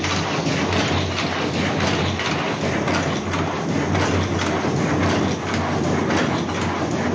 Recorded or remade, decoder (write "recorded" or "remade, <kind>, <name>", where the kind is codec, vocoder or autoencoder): recorded